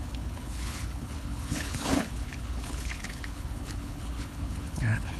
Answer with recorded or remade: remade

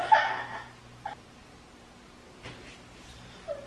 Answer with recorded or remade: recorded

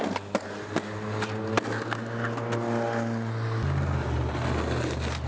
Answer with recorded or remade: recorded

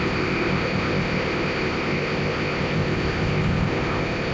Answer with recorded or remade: remade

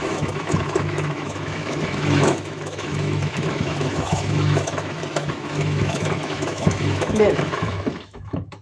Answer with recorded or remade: remade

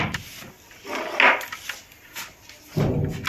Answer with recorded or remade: recorded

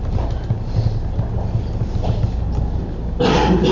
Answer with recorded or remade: recorded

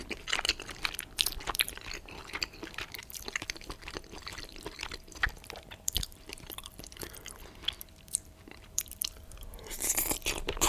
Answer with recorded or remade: remade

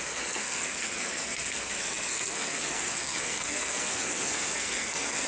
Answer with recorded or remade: remade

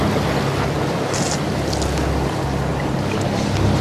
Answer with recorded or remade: recorded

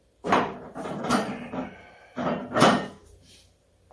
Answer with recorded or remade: remade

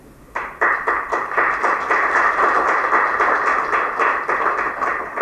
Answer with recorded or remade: recorded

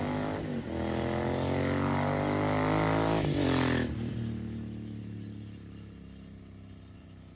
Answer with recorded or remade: recorded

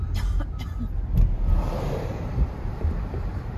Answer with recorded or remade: remade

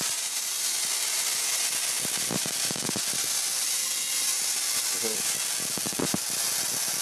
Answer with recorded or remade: recorded